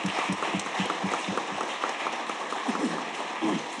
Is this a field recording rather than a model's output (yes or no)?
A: yes